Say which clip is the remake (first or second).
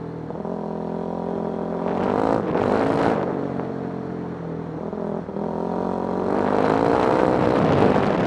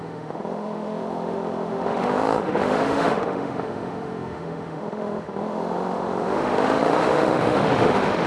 second